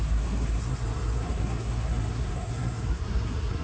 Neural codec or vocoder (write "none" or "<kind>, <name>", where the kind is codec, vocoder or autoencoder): codec, SNAC